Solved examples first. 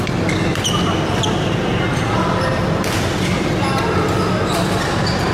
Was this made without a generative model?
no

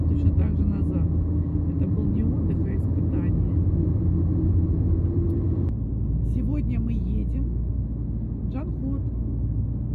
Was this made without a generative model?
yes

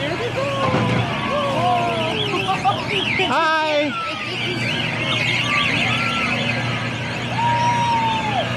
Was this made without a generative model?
yes